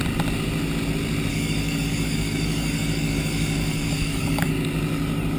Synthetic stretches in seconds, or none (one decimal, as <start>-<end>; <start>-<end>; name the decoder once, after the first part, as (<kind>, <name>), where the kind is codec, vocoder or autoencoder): 1.3-4.5 (codec, DAC)